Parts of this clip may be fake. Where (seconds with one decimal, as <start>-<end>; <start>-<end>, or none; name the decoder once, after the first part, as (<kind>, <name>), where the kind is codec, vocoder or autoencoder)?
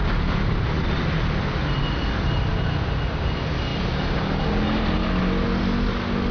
0.0-2.5 (vocoder, BigVGAN v2); 3.7-4.9